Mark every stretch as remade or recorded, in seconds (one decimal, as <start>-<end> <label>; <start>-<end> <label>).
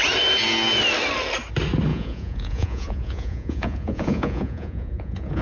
0.0-1.9 recorded; 1.9-5.4 remade